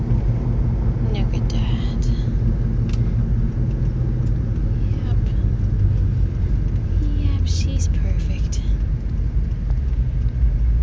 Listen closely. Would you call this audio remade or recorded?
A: recorded